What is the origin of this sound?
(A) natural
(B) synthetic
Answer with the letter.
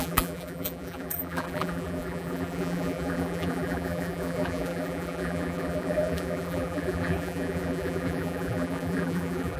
B